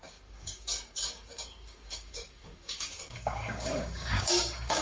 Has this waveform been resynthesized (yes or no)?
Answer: yes